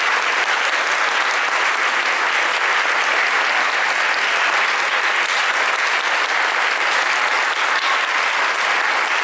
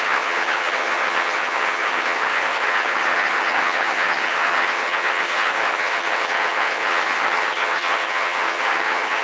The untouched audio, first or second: first